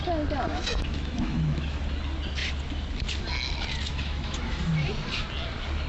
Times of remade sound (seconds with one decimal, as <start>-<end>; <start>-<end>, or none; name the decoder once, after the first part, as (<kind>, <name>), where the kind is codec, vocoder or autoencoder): 0.5-1.8 (autoencoder, DAC-VAE); 3.9-4.7